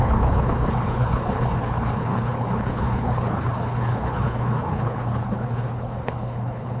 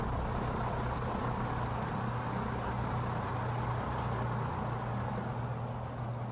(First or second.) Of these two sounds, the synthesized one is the first